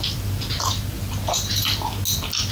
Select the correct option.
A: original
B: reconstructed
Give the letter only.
A